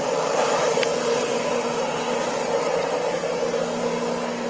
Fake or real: real